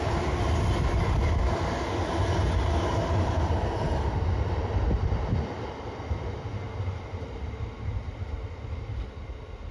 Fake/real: real